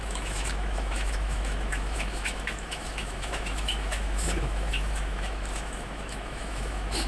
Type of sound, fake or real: fake